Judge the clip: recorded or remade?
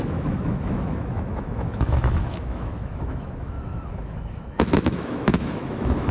remade